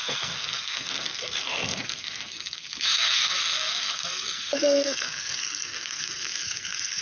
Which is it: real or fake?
fake